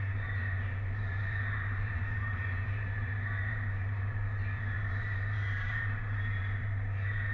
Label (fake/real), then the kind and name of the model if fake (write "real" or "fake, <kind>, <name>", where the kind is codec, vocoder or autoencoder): fake, vocoder, BigVGAN v2